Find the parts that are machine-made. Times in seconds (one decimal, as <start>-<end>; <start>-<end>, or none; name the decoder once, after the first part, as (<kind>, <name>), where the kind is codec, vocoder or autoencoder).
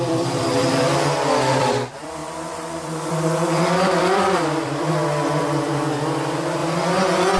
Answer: 0.0-0.6 (vocoder, BigVGAN v2); 1.3-7.4